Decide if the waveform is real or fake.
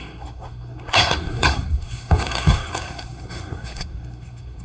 fake